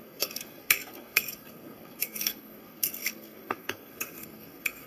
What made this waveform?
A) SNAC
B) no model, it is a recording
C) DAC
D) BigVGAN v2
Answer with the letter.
A